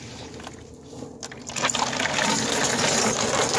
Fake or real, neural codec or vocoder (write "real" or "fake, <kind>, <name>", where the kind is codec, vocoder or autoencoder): real